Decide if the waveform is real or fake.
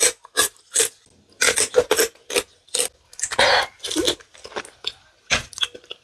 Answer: real